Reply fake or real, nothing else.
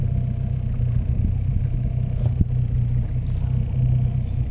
real